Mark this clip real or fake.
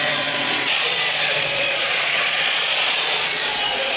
fake